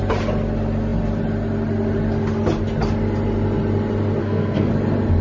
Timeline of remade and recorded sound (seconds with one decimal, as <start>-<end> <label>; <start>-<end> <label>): 0.0-4.2 recorded; 4.2-4.7 remade; 4.7-5.2 recorded